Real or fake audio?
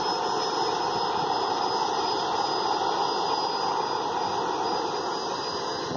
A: real